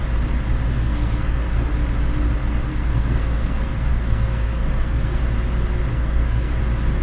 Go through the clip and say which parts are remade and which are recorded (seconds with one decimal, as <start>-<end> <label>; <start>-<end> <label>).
0.0-0.7 recorded; 0.7-1.7 remade; 1.7-2.4 recorded; 2.4-5.2 remade; 5.2-5.9 recorded; 5.9-6.6 remade; 6.6-7.0 recorded